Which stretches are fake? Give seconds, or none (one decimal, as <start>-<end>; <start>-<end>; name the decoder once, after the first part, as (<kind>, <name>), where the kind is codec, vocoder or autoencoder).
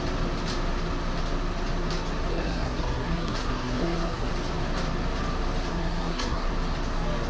2.3-4.3 (codec, SNAC); 5.7-6.5